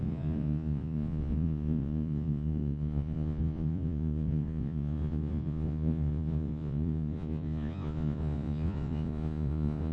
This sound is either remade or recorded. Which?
remade